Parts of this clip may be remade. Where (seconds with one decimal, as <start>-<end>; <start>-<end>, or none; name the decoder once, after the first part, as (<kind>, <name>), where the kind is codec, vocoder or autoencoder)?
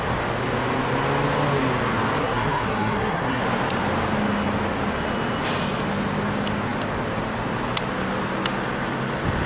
2.2-3.4 (codec, SNAC)